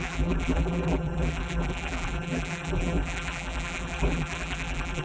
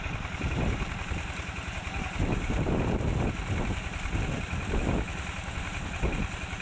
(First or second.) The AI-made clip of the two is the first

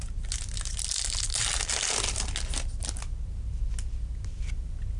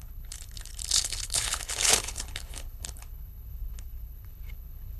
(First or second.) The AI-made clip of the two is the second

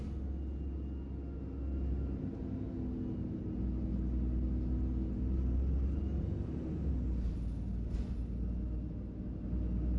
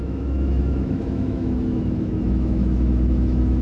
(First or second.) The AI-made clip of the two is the second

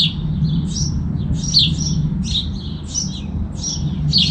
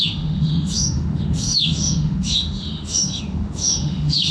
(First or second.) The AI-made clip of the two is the second